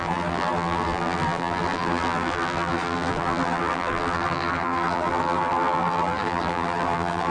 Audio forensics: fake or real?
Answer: fake